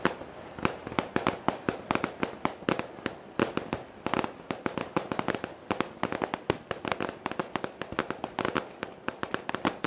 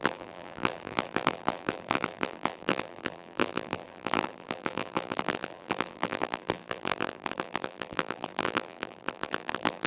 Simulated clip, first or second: second